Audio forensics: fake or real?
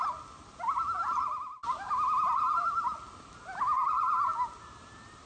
real